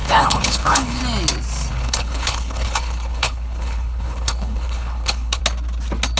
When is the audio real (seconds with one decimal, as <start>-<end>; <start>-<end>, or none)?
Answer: 1.0-1.7; 5.4-6.2